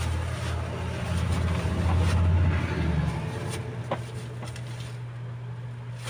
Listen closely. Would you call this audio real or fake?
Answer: real